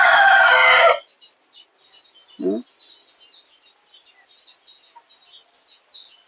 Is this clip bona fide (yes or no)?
yes